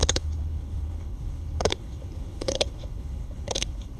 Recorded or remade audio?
remade